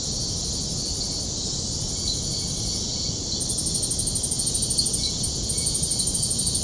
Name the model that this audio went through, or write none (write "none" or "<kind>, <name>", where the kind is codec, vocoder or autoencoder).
none